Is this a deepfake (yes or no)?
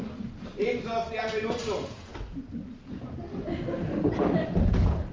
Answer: no